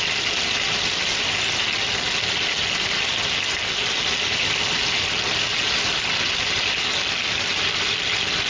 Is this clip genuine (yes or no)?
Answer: yes